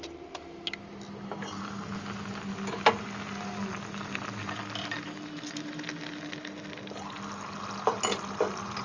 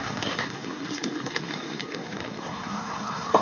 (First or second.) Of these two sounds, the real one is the first